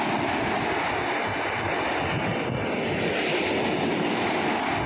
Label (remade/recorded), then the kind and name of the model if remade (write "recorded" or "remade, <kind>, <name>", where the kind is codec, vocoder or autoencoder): recorded